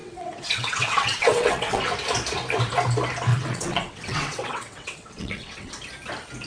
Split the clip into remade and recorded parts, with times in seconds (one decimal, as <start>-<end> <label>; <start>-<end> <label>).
0.0-1.8 remade; 1.8-3.3 recorded; 3.3-5.7 remade; 5.7-6.5 recorded